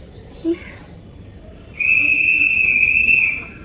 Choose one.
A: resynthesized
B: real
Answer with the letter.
B